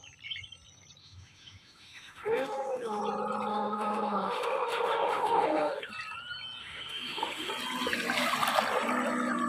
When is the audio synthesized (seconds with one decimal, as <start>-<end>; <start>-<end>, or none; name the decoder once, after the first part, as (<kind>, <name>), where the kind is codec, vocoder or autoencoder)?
1.0-3.0 (autoencoder, DAC-VAE); 3.5-5.9; 6.6-7.5